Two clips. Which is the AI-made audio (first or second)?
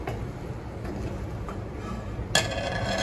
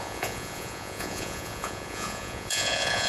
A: second